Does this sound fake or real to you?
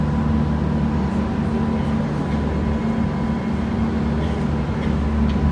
real